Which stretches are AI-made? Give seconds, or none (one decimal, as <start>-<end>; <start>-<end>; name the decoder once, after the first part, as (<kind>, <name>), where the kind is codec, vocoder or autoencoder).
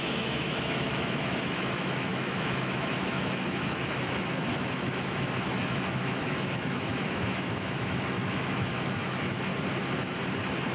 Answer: 0.0-9.5 (autoencoder, DAC-VAE)